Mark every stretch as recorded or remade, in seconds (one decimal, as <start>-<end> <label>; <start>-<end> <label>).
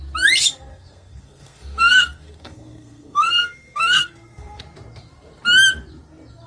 0.0-0.7 recorded; 0.7-4.6 remade; 4.6-6.5 recorded